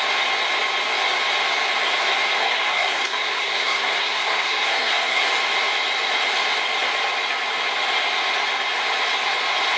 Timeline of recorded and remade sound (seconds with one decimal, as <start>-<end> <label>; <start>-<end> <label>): 0.0-2.4 recorded; 2.4-5.3 remade; 5.3-9.8 recorded